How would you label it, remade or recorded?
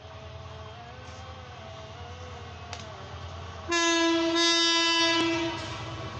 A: recorded